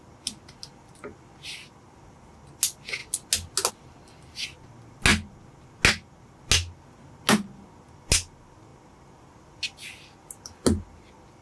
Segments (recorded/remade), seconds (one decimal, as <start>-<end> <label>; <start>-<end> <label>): 0.0-11.4 recorded